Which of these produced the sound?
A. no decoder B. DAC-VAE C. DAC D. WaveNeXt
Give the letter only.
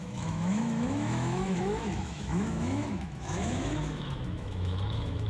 B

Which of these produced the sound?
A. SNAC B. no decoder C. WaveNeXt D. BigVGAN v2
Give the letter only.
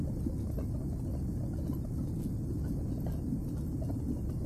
B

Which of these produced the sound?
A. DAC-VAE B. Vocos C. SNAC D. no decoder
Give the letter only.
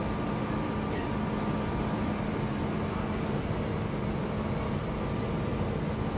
D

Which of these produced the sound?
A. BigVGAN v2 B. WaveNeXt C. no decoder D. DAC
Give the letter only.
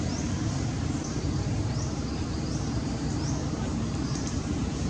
A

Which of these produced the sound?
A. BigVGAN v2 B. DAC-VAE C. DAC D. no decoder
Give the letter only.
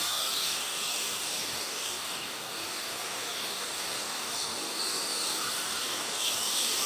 C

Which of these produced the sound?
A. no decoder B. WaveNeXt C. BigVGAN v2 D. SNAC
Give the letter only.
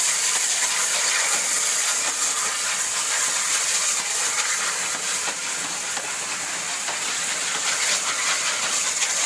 A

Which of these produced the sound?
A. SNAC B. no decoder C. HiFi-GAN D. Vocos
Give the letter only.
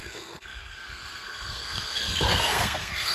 A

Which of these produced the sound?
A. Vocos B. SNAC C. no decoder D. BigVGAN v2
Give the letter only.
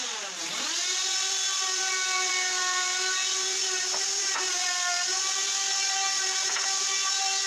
D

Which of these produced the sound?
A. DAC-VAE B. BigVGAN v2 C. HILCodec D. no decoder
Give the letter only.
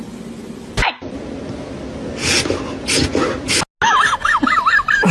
D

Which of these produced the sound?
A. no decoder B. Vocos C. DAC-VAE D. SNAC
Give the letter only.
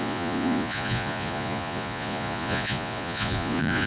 B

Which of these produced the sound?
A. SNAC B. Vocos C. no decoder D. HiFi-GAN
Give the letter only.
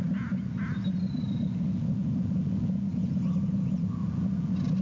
C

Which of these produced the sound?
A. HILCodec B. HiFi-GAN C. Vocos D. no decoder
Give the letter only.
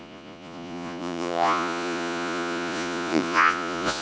C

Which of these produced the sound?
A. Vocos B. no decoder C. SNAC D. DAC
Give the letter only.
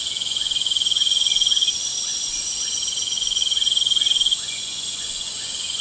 A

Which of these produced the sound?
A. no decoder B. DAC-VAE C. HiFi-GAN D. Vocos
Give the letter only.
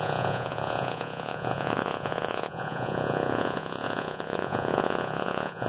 D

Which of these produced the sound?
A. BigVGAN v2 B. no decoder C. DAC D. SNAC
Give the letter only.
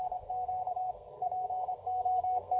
D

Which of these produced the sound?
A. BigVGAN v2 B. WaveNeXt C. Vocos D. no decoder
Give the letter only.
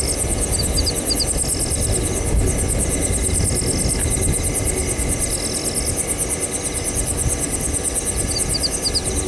D